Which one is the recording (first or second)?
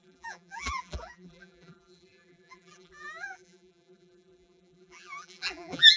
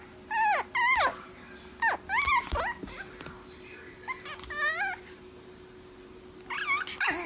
second